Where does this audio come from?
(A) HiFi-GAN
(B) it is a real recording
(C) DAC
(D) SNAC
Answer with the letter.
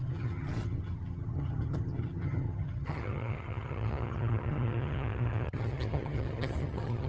A